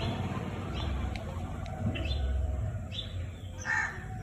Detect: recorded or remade remade